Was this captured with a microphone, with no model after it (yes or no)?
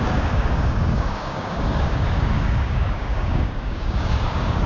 no